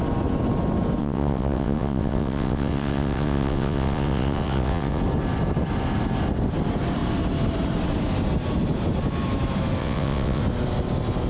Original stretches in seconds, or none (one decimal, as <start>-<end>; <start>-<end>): 0.0-1.0; 5.0-9.8; 10.4-11.3

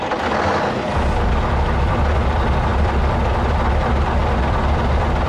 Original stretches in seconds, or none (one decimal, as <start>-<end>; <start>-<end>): 0.0-5.3

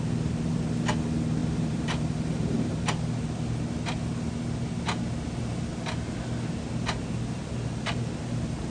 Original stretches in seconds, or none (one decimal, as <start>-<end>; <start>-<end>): 0.0-1.4; 2.7-8.7